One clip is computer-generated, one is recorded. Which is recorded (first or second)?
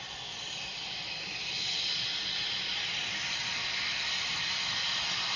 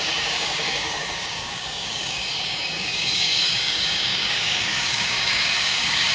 first